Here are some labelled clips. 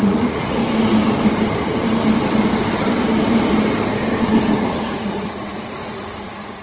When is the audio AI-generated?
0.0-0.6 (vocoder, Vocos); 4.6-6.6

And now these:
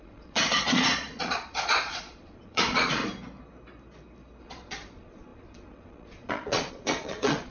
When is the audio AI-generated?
0.0-3.0 (vocoder, Vocos); 4.4-7.5